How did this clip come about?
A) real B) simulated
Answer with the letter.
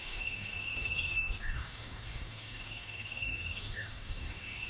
B